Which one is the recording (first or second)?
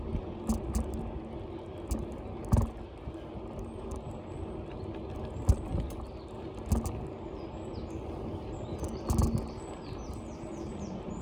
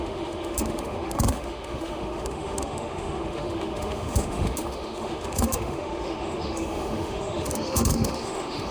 first